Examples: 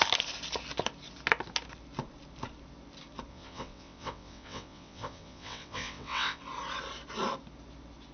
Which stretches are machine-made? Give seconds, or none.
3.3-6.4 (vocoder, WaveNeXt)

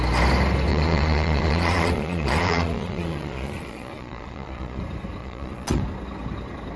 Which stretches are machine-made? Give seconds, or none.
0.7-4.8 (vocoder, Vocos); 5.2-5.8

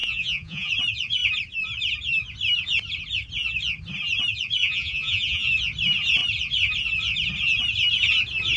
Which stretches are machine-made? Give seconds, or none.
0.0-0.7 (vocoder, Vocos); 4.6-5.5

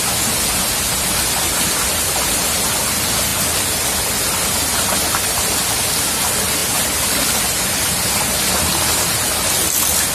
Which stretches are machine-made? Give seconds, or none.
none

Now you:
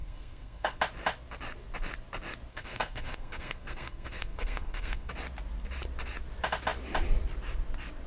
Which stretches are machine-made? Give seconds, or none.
0.0-0.8 (codec, SNAC); 2.5-5.1

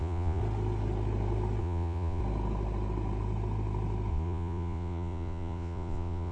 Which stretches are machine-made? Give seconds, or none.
0.0-0.4 (vocoder, Vocos); 1.6-2.2; 4.1-6.3

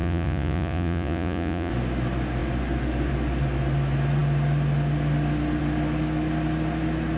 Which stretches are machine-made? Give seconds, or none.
0.0-1.7 (vocoder, Vocos)

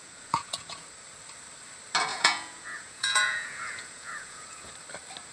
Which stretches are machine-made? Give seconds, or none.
0.0-0.9 (vocoder, Vocos); 2.1-4.7